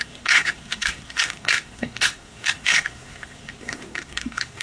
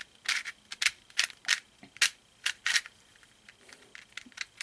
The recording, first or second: second